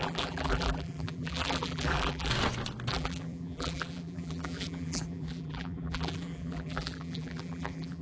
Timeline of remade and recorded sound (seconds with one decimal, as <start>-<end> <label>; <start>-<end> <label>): 0.0-2.3 remade; 2.3-2.9 recorded; 2.9-8.0 remade